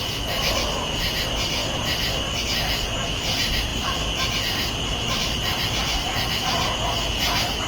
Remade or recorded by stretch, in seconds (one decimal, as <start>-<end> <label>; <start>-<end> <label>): 0.0-7.7 recorded